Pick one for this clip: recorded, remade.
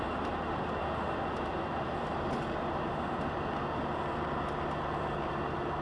recorded